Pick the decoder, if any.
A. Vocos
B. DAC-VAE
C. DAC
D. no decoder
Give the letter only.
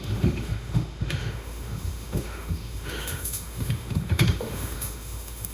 B